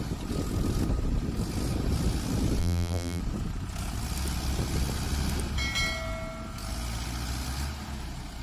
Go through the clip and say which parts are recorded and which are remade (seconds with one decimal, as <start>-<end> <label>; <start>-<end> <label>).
0.0-2.6 recorded; 2.6-3.2 remade; 3.2-8.4 recorded